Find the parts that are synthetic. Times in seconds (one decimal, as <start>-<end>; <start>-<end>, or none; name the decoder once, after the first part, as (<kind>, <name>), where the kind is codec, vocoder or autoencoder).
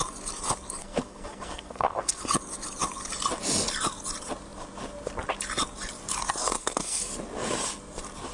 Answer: 0.8-2.2 (codec, SNAC); 6.6-7.1